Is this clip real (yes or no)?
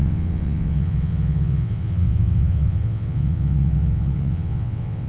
no